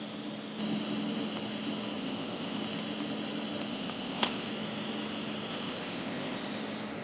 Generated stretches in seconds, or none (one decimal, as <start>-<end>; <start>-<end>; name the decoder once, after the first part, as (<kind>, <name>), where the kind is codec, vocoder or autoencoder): 2.0-2.6 (codec, ZipCodec); 3.7-4.5; 5.5-6.6